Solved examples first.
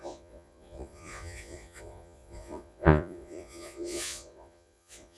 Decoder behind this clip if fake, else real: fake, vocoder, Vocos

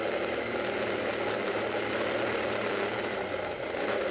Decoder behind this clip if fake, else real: real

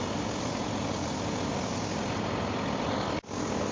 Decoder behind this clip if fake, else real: real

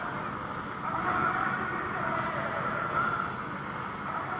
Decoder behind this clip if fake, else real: real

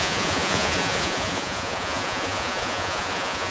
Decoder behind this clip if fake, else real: fake, vocoder, Vocos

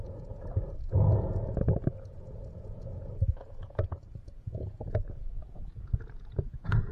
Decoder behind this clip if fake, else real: fake, vocoder, Vocos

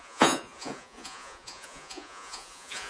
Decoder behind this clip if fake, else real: fake, vocoder, Vocos